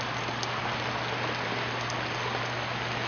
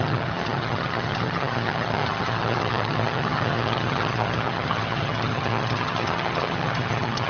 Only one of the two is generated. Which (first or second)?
second